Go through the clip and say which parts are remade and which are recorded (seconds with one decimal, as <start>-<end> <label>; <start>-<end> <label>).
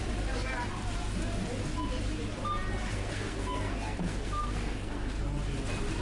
0.0-2.9 recorded; 2.9-5.2 remade; 5.2-6.0 recorded